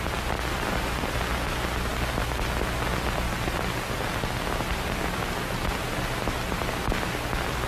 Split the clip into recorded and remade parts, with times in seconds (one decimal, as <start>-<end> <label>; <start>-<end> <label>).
0.0-7.7 recorded